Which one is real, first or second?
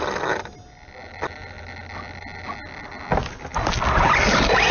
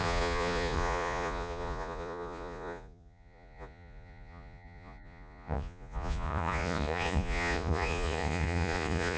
first